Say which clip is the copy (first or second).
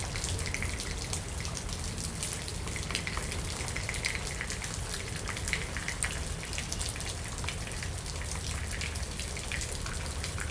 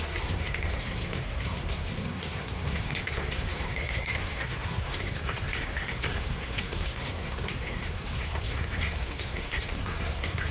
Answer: second